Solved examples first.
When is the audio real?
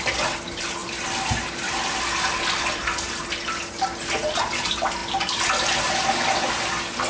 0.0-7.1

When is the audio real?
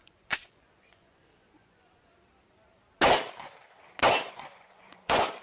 2.1-4.1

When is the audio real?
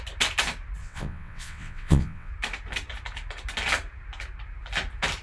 0.0-0.8; 2.3-5.2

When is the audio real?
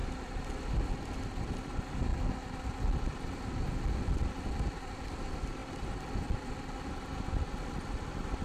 0.0-8.4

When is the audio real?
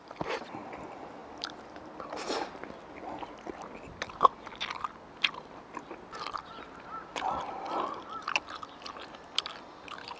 0.0-10.2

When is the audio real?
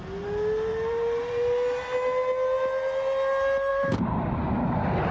0.0-0.7; 1.3-3.7; 4.5-5.1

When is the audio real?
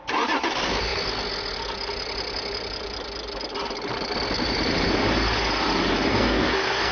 0.0-6.1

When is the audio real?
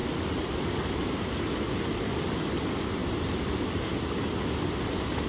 0.0-5.3